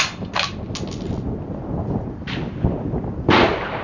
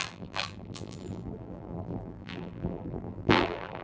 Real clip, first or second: first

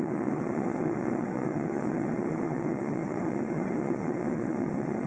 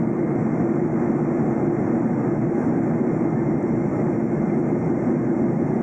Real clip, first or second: second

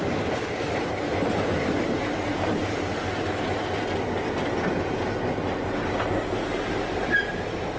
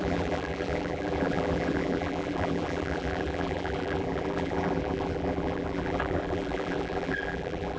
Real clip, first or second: first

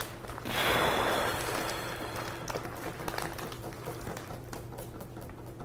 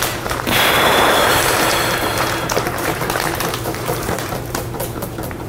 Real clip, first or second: first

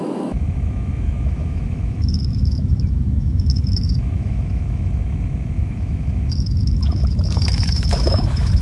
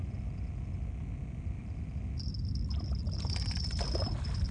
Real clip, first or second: second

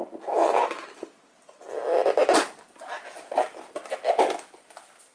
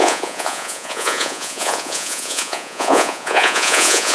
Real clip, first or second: first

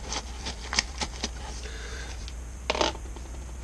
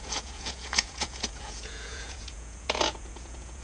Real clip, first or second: first